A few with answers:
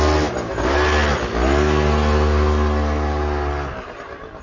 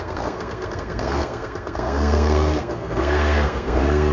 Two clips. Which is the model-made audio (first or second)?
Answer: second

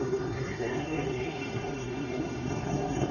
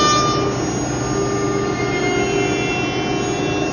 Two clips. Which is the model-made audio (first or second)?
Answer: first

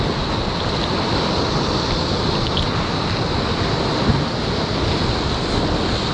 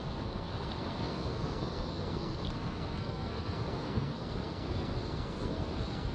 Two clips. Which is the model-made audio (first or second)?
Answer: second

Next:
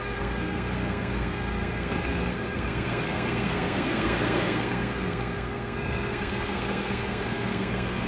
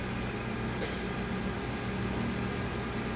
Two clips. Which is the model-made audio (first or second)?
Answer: first